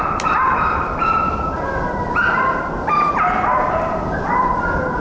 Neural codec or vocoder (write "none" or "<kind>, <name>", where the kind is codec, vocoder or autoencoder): none